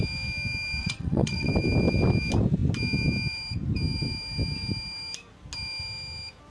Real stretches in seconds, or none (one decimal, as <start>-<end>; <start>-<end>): 0.0-0.8; 1.5-6.5

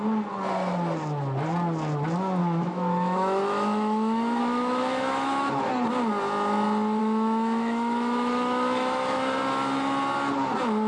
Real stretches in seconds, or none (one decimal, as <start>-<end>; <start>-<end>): 0.0-2.4; 5.5-7.0; 9.4-10.9

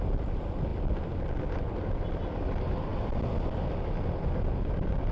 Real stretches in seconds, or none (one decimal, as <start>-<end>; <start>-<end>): 0.0-5.1